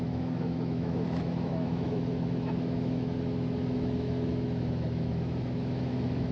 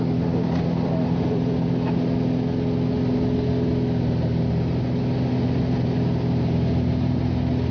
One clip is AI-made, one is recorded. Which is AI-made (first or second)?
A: first